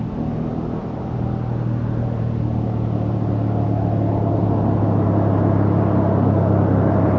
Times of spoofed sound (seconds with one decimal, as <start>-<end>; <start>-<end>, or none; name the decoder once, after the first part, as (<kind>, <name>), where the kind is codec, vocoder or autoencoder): none